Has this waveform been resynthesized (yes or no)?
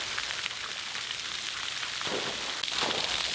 no